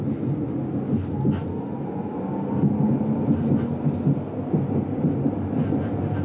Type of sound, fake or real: real